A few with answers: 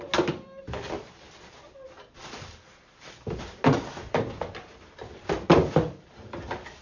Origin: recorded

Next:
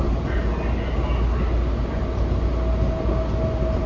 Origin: recorded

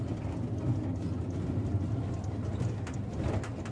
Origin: recorded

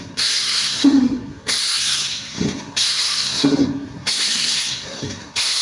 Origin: remade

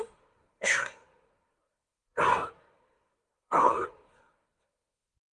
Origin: remade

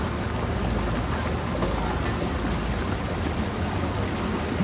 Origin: recorded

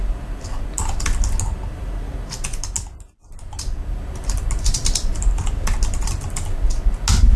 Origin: recorded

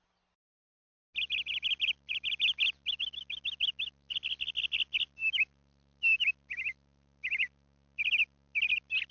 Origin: recorded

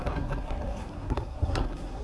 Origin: remade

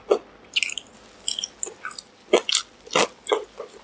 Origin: recorded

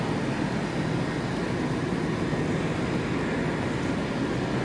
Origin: recorded